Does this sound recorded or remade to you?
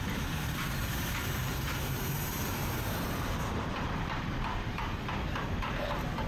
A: remade